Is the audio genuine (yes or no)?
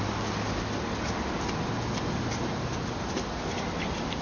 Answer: yes